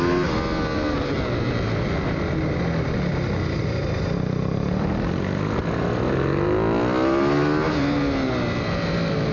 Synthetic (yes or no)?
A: no